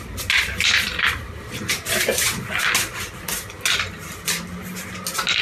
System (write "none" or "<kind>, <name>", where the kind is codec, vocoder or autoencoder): none